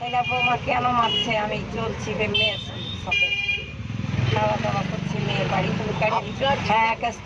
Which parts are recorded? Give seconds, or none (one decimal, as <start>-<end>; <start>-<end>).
3.8-4.8